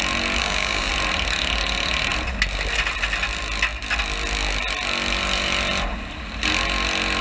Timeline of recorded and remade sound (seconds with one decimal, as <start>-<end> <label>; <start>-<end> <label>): 0.0-0.4 recorded; 0.4-0.9 remade; 0.9-7.2 recorded